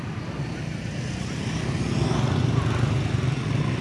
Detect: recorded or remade recorded